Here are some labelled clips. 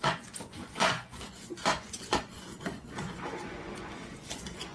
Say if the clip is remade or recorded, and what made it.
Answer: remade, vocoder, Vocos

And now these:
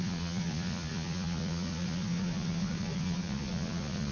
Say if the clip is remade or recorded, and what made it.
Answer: remade, vocoder, Vocos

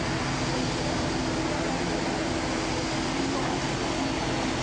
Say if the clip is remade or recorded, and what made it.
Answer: recorded